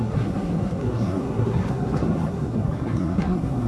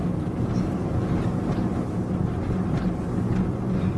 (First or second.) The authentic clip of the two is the second